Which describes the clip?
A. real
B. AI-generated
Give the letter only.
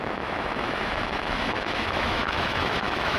B